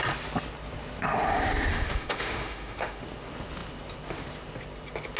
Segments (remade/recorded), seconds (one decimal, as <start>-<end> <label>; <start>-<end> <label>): 0.0-1.7 recorded; 1.7-3.0 remade; 3.0-5.2 recorded